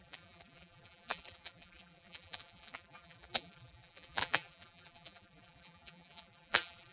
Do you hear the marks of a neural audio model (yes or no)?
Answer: yes